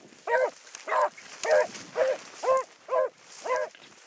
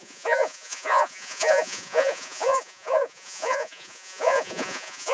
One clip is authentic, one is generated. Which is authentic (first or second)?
first